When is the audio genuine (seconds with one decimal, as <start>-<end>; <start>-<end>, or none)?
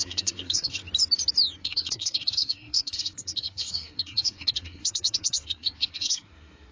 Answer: 0.8-1.6